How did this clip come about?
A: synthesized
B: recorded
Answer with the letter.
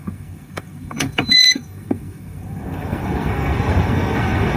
A